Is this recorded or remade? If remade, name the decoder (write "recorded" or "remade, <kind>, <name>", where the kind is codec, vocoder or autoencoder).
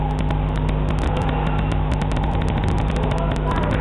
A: recorded